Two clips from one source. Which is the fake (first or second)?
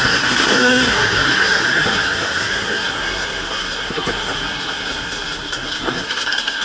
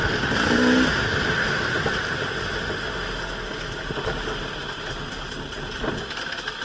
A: first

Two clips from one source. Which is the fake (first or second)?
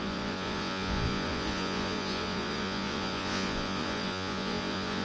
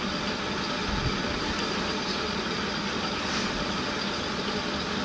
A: first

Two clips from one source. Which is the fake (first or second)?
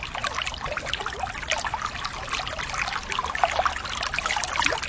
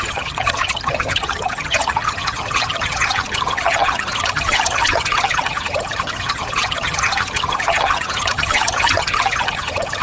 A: second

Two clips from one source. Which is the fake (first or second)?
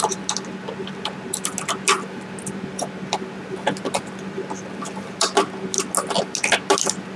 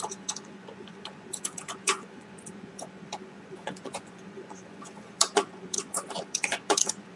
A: second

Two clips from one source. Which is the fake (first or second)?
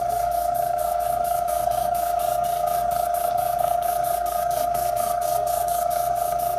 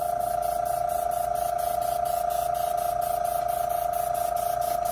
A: first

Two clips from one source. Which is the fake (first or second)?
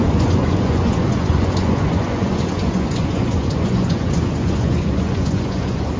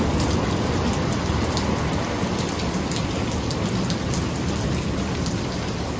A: first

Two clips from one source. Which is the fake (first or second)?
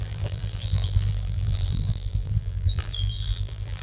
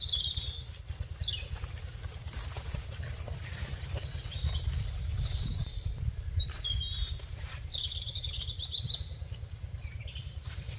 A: first